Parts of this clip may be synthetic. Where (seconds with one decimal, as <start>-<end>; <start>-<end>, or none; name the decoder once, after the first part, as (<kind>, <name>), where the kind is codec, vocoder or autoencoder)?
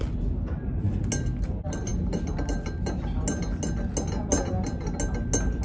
none